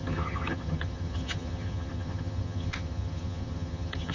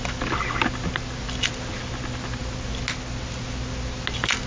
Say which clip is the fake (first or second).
first